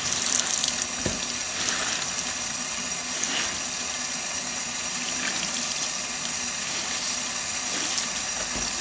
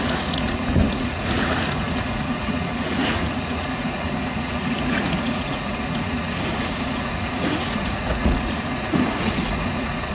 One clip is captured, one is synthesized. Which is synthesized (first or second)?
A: second